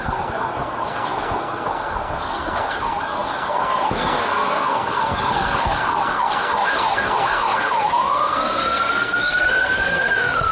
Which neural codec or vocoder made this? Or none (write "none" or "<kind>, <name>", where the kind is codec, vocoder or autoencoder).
codec, SNAC